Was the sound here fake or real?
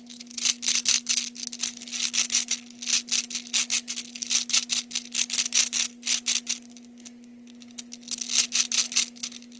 real